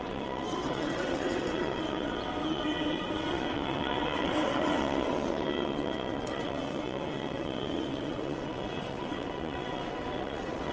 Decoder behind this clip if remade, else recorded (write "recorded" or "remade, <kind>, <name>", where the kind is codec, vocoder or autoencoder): remade, vocoder, WaveNeXt